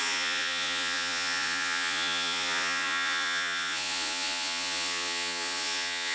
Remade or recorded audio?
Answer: remade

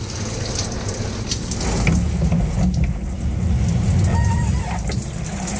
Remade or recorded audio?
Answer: recorded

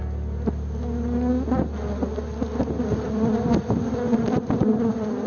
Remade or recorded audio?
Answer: recorded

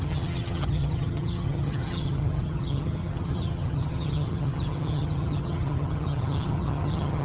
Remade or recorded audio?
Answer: remade